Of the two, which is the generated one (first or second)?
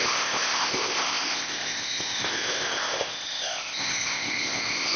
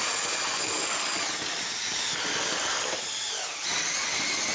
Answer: first